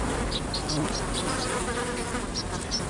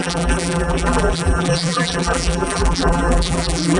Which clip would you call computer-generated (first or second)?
second